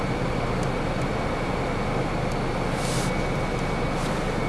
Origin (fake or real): real